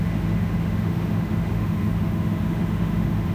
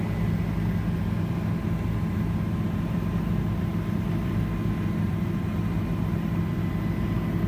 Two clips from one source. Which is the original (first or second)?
second